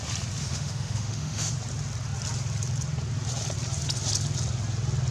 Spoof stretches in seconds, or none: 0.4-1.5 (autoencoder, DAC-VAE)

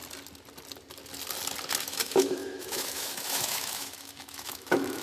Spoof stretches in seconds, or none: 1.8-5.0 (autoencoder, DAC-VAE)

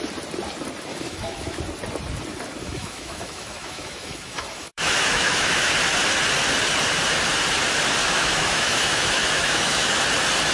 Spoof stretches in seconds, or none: 0.9-1.6 (autoencoder, DAC-VAE); 2.6-5.7; 8.0-10.0

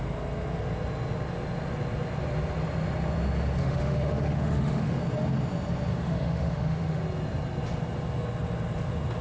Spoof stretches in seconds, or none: 3.6-5.0 (autoencoder, DAC-VAE); 5.9-7.0

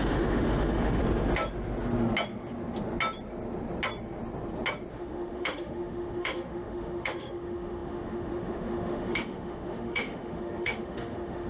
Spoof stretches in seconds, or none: 0.0-1.0 (autoencoder, DAC-VAE); 4.9-11.5

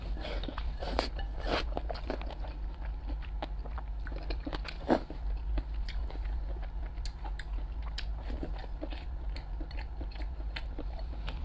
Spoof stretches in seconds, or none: none

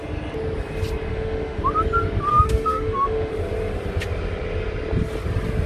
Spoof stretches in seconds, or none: 1.1-1.6 (autoencoder, DAC-VAE); 2.3-3.3